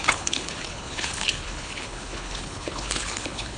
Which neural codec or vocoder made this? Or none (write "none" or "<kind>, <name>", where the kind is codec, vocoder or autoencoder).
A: codec, HILCodec